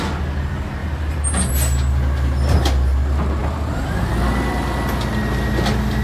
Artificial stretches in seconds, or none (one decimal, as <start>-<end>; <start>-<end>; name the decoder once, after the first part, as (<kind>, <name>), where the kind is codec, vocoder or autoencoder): 0.8-1.5 (vocoder, BigVGAN v2); 3.4-4.1